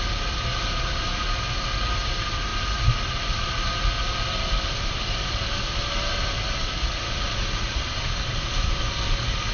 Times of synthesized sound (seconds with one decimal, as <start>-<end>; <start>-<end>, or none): 6.8-7.8